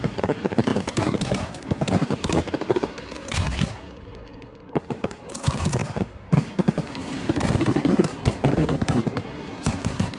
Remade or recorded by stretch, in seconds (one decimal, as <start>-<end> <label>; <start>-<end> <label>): 0.0-10.2 remade